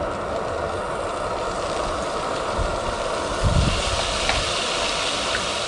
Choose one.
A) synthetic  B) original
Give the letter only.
B